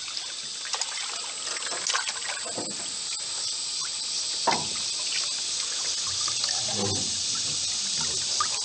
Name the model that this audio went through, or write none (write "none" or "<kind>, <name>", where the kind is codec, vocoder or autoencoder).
none